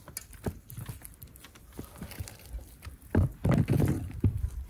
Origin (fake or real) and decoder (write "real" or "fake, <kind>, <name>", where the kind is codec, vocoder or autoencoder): real